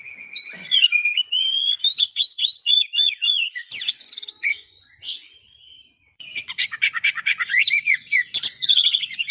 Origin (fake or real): fake